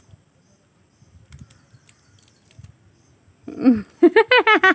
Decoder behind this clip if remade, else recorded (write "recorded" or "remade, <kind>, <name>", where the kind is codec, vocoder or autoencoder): recorded